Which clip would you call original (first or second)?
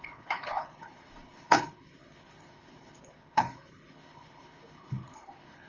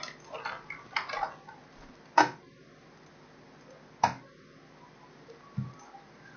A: second